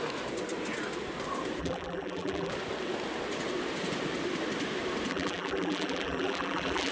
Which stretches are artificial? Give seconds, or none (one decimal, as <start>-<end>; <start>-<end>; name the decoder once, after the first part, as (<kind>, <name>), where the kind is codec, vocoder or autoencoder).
1.6-2.5 (vocoder, BigVGAN v2); 5.1-6.9